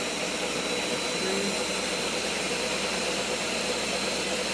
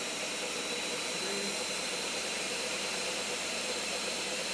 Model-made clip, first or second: second